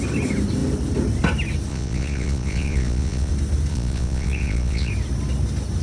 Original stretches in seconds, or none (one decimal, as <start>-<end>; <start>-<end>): 0.0-1.7; 3.3-3.7; 4.9-5.8